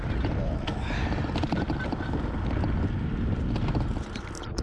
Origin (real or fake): real